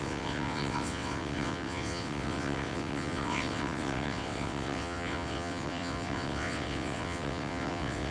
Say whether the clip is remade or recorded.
remade